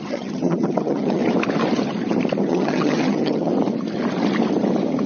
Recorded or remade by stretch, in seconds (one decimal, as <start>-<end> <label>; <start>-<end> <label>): 0.0-1.2 remade; 1.2-2.4 recorded; 2.4-3.5 remade; 3.5-5.1 recorded